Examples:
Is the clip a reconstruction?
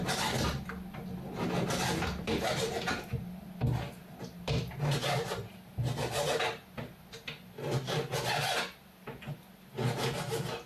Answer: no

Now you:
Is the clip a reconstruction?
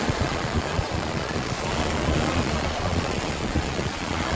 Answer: yes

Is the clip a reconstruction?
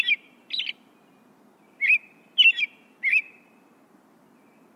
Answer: no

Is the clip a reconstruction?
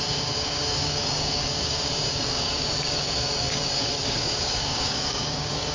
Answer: yes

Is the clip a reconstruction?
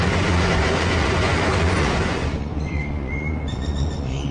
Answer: yes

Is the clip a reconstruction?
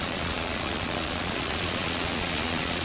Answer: yes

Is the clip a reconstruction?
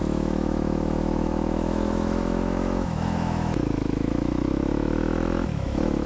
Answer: yes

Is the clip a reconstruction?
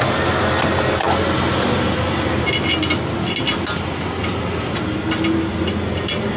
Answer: no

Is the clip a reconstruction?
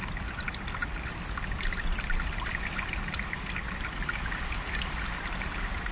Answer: no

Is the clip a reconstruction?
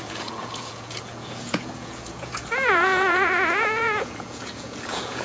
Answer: yes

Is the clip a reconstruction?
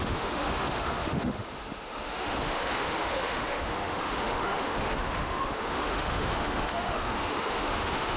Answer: yes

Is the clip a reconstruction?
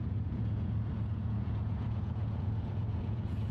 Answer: yes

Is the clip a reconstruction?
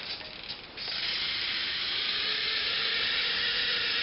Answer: no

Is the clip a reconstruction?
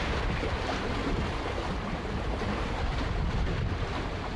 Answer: no